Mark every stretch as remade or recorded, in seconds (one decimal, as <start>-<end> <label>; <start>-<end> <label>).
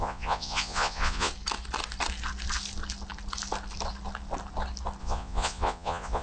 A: 0.0-1.3 remade; 1.3-5.0 recorded; 5.0-6.2 remade